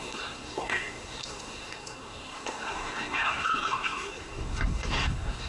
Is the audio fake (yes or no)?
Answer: yes